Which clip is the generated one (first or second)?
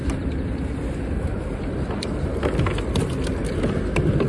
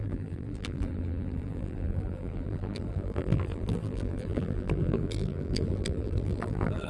second